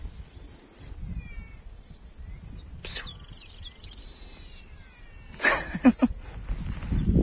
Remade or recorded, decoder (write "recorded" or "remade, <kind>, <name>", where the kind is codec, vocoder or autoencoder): recorded